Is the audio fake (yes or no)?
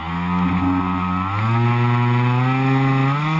no